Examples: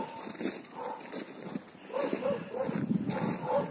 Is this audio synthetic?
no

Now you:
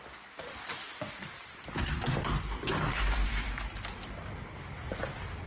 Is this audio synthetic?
no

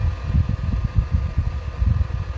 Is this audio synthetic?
no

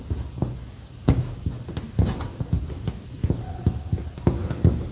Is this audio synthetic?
no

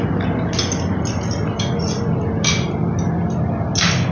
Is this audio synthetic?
no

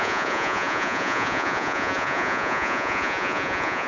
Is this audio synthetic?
yes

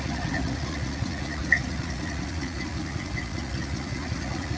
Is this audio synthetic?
yes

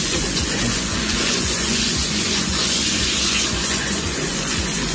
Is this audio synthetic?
yes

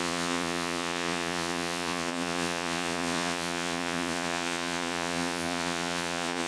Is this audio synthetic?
yes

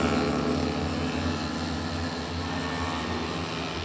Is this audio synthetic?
no